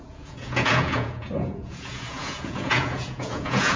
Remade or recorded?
remade